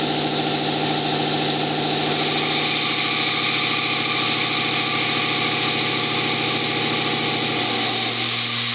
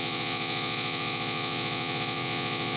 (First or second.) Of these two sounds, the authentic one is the first